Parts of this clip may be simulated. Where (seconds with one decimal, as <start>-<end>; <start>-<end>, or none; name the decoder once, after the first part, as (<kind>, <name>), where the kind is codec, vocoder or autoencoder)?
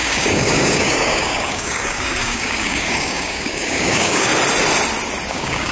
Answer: 0.0-4.3 (codec, DAC); 5.3-5.7